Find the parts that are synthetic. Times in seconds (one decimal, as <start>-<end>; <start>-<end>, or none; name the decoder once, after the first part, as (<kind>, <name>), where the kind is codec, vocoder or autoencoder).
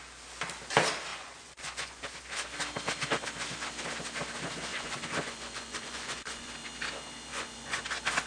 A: 1.1-2.0 (vocoder, Vocos); 4.7-6.5; 7.3-7.8